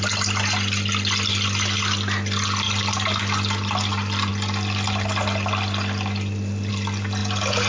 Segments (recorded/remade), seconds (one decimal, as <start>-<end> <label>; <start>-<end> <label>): 0.0-7.2 recorded; 7.2-7.7 remade